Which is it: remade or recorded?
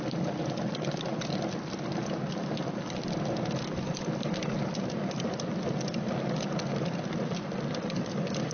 recorded